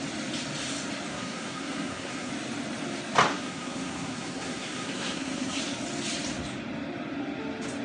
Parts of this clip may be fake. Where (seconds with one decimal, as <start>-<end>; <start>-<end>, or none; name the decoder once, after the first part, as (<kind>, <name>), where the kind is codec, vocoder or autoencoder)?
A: 1.1-2.3 (codec, SNAC); 3.3-5.6